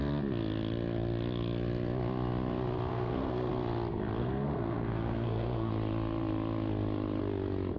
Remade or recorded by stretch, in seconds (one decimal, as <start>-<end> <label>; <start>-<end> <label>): 0.0-2.9 recorded; 2.9-3.5 remade; 3.5-4.2 recorded; 4.2-5.7 remade; 5.7-7.8 recorded